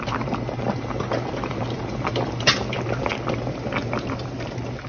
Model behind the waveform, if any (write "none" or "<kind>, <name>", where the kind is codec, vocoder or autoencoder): none